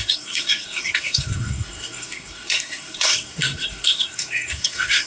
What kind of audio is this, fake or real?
fake